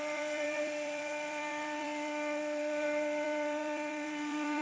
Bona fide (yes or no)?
no